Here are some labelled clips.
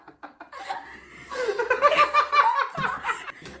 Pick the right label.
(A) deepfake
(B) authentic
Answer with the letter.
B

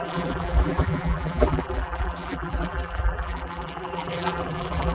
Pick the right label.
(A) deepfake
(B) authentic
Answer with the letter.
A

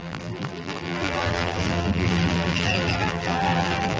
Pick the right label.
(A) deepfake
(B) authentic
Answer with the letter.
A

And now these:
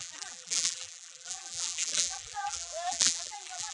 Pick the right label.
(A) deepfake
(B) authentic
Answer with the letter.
A